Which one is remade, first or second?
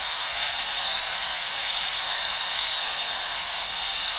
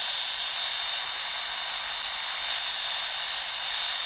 first